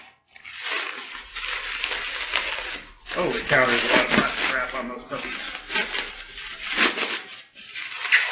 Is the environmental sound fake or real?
real